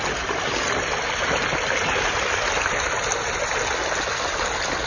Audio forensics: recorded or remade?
recorded